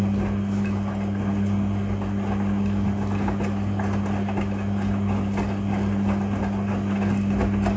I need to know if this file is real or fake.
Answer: real